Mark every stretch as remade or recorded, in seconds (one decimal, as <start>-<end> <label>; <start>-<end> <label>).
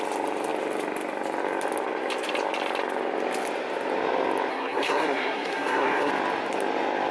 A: 0.0-4.5 recorded; 4.5-6.1 remade; 6.1-7.1 recorded